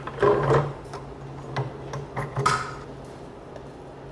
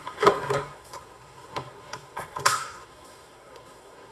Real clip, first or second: first